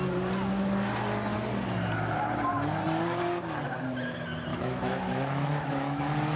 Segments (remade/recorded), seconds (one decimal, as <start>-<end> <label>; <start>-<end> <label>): 0.0-4.5 recorded; 4.5-6.0 remade; 6.0-6.4 recorded